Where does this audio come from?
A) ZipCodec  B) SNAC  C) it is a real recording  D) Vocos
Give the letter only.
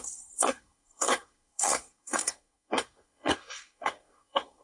B